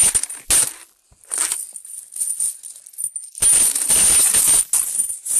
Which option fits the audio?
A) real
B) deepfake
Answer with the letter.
A